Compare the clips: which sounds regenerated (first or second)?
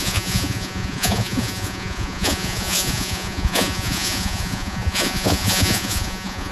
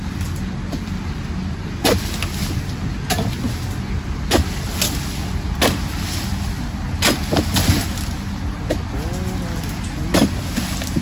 first